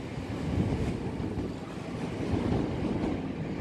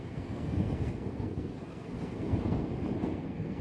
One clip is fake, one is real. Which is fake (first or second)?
second